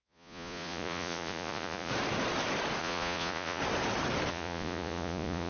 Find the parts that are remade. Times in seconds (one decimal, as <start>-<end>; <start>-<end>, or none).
0.0-1.9; 2.8-3.6; 4.3-5.5